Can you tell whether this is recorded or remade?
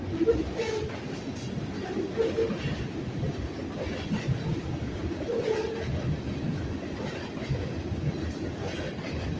recorded